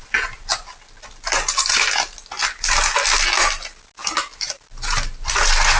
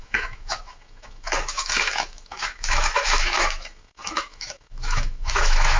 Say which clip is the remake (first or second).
second